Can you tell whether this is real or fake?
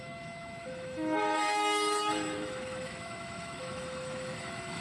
fake